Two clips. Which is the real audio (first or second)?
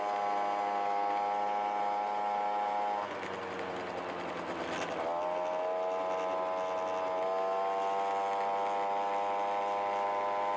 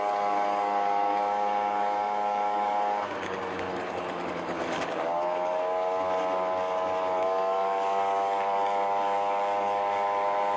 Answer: first